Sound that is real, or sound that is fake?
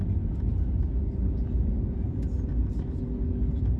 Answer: real